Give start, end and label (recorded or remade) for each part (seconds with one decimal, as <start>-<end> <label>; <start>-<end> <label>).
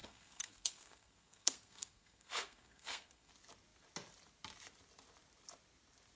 0.0-3.3 remade; 3.3-6.2 recorded